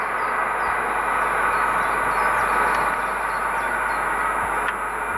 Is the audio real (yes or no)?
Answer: yes